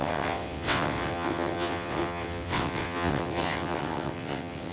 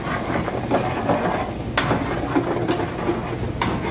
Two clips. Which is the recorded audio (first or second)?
second